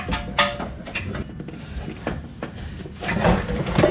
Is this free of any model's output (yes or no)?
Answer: yes